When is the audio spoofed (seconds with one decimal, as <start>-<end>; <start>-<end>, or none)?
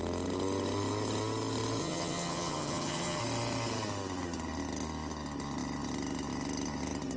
1.8-3.2